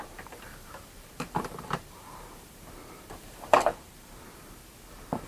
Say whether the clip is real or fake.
fake